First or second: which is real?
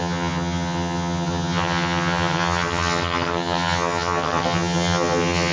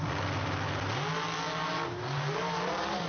second